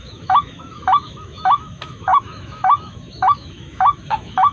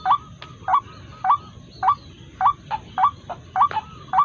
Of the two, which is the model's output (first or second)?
first